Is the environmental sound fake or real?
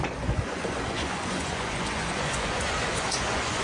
fake